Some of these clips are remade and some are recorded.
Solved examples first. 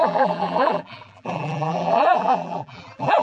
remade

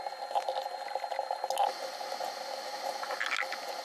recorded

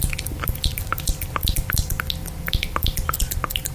recorded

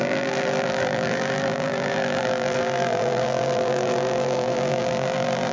remade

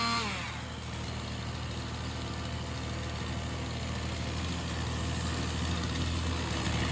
recorded